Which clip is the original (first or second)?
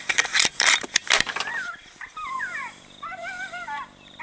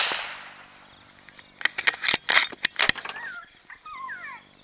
second